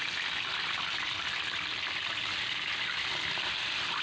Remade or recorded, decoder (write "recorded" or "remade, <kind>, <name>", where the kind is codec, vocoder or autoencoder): recorded